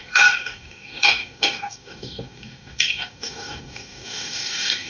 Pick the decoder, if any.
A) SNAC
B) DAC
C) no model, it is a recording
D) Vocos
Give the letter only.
B